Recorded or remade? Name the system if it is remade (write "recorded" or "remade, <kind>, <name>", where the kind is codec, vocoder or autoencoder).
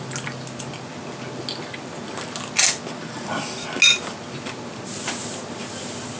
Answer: recorded